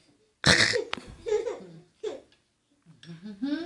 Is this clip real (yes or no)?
yes